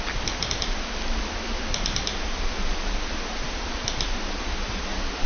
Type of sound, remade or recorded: recorded